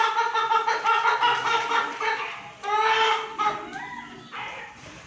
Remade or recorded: recorded